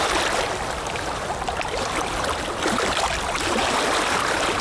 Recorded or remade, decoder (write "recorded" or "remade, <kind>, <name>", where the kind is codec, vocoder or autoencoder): remade, vocoder, BigVGAN v2